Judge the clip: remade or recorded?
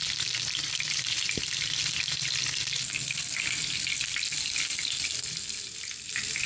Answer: recorded